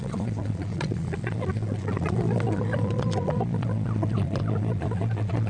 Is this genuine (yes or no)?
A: no